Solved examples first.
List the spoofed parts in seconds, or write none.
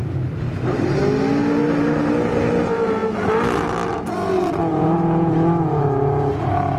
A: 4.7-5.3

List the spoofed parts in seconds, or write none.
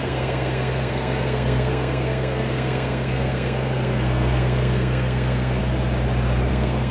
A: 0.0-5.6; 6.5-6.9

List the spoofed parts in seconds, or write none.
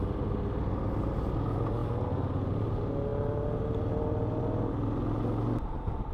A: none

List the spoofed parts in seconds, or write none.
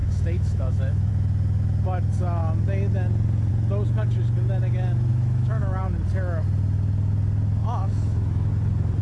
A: 0.0-1.1; 5.1-5.8; 7.6-8.5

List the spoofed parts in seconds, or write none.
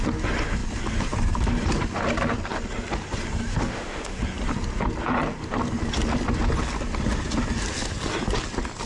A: 3.5-4.2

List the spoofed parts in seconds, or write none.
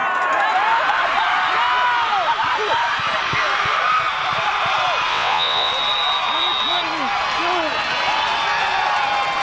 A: 5.1-5.7